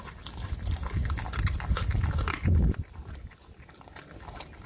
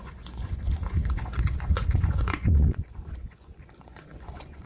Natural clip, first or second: first